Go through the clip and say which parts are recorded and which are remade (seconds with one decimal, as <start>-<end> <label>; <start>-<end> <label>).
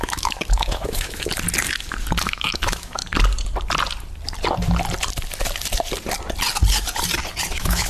0.0-1.3 remade; 1.3-2.2 recorded; 2.2-3.0 remade; 3.0-7.5 recorded; 7.5-7.9 remade